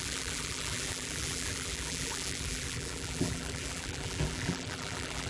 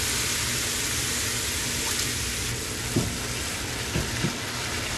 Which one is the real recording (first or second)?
second